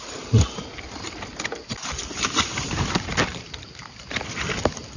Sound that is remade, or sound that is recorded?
remade